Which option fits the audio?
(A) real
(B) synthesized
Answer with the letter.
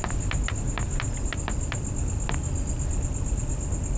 A